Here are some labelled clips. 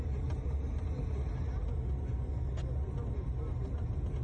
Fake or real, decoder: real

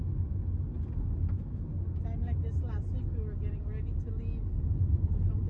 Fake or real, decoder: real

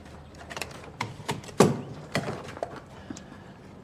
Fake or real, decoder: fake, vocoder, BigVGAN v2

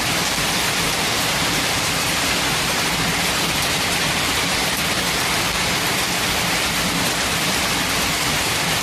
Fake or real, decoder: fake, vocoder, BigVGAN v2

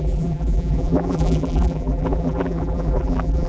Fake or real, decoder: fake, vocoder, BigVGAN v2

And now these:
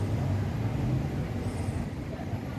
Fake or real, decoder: real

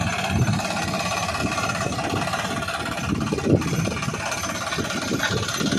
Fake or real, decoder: real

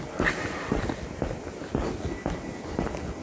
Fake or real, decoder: real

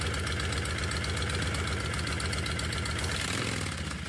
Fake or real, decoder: real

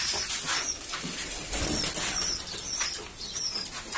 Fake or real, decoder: real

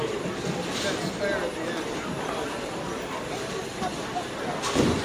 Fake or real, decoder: real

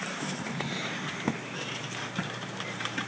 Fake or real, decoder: fake, vocoder, BigVGAN v2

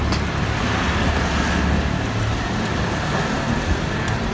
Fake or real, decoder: real